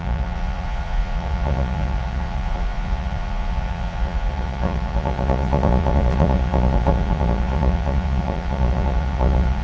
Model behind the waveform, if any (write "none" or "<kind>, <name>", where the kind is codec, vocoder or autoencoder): vocoder, Vocos